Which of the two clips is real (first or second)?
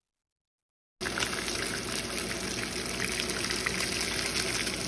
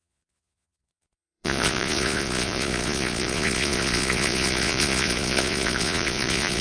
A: first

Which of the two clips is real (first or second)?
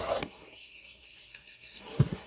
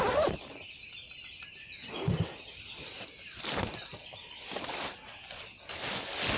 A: second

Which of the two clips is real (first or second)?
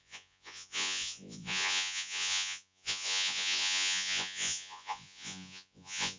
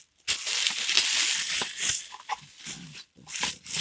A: second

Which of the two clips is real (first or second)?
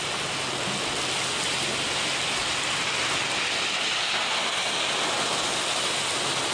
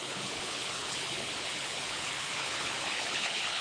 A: first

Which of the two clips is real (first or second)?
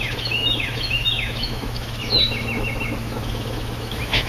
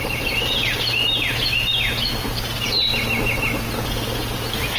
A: second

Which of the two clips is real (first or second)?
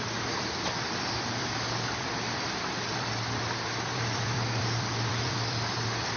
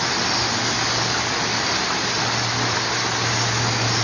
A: second